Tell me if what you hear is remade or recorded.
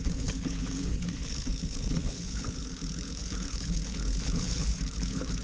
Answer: remade